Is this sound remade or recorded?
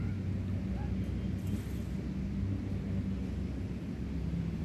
recorded